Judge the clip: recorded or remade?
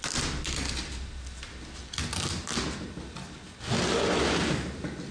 recorded